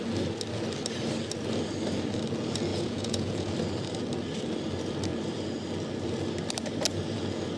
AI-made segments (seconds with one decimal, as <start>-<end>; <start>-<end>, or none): 2.7-3.5